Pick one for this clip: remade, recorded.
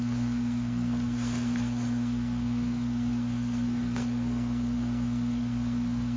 remade